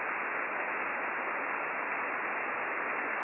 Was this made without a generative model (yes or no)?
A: yes